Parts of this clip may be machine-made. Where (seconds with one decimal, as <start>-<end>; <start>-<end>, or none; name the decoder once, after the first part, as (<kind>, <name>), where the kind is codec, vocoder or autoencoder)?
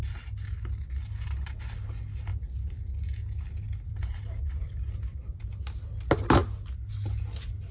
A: none